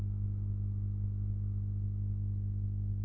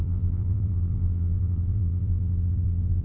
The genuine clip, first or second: first